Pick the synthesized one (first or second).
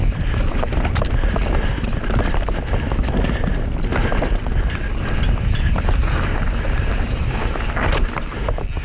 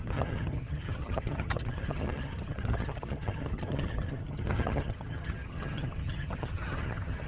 second